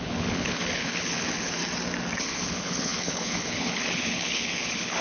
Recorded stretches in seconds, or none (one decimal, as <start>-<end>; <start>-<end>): 1.6-2.2

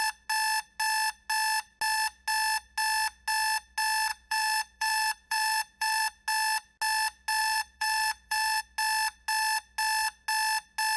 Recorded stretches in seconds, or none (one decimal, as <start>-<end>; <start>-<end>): 0.0-4.1; 6.0-7.4; 8.6-11.0

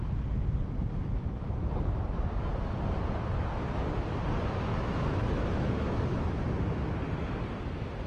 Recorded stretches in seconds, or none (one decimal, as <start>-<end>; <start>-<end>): 0.0-0.9; 1.5-4.7; 6.4-8.1

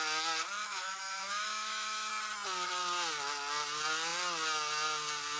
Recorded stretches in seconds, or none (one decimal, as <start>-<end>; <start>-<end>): 0.0-0.6; 2.1-5.4

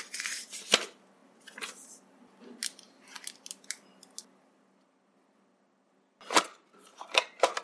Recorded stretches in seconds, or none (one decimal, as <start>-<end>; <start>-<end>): 0.0-6.5

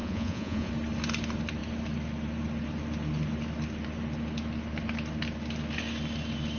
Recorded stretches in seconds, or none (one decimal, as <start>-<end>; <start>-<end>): 0.7-6.6

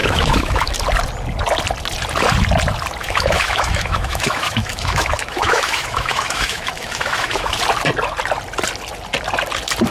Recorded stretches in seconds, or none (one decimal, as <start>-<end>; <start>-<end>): 0.8-3.0; 7.6-9.9

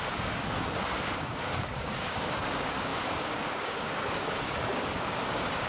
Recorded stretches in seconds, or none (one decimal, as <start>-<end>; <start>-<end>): none